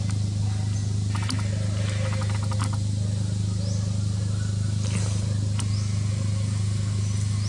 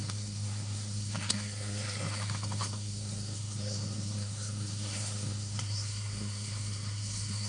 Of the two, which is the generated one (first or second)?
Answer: second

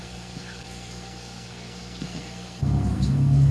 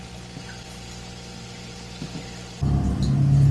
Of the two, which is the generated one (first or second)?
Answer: first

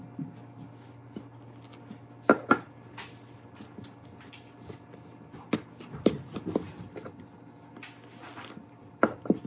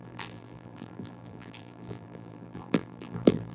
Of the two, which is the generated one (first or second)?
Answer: second